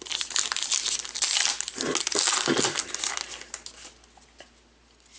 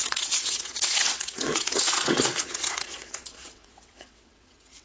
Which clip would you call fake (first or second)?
second